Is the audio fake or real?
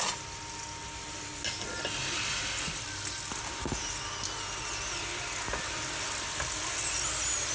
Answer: real